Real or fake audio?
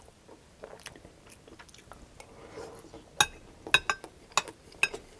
real